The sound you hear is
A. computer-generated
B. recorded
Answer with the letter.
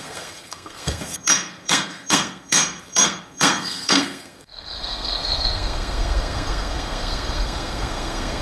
A